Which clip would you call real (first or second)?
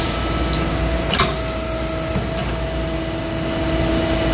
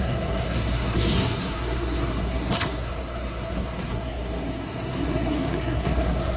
first